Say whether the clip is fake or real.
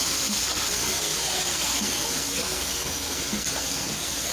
fake